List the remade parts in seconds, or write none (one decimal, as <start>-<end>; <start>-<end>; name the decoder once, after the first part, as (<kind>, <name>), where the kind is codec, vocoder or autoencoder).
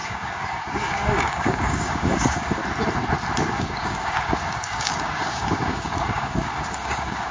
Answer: 0.0-2.6 (codec, DAC); 3.5-7.3